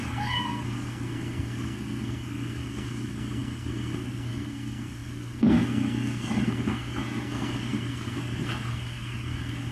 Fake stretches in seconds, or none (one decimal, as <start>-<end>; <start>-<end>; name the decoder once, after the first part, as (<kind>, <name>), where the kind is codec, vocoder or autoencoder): 0.0-9.7 (codec, SNAC)